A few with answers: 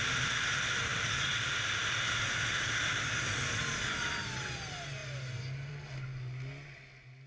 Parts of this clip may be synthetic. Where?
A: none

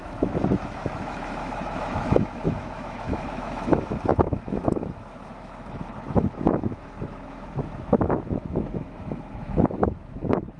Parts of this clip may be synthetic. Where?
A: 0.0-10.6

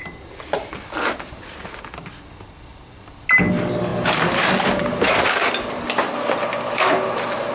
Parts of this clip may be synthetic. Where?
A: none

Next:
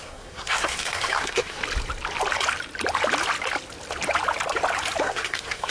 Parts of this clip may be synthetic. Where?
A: 0.0-1.6; 5.0-5.7

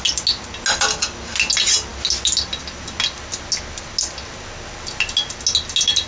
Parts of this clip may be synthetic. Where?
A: none

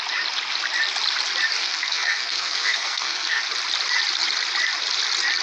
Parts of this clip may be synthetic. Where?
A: 1.6-3.4